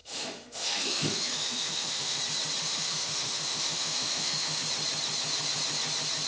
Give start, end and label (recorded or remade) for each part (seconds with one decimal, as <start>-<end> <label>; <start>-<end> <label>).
0.0-2.2 remade; 2.2-2.6 recorded; 2.6-4.6 remade; 4.6-6.3 recorded

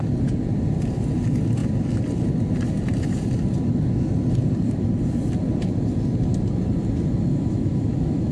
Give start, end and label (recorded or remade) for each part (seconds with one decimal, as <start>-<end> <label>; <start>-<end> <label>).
0.0-7.3 recorded; 7.3-8.3 remade

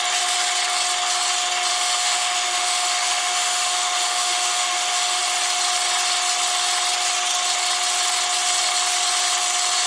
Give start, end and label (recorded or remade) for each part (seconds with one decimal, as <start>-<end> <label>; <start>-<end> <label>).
0.0-1.7 recorded; 1.7-5.2 remade; 5.2-9.9 recorded